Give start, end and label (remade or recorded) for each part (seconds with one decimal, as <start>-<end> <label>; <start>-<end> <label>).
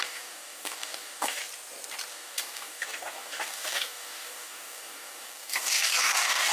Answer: 0.0-1.4 remade; 1.4-2.1 recorded; 2.1-6.5 remade